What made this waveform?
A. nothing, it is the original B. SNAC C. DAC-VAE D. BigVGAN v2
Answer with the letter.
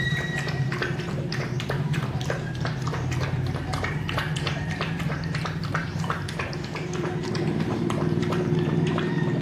D